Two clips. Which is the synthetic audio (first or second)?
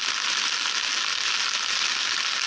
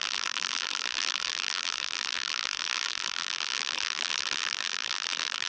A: second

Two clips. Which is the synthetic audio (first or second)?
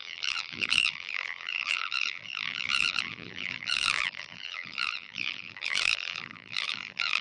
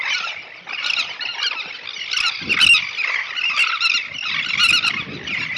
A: first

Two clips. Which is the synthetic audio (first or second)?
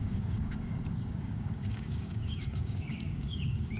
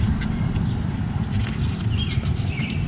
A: first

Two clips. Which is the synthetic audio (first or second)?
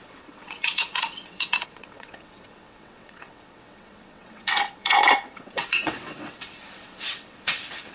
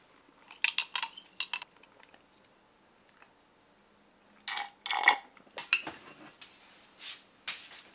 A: first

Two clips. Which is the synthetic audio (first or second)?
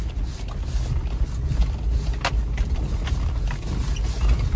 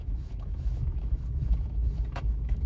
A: second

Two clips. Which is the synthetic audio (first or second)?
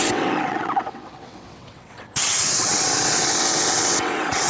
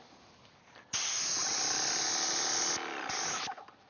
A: first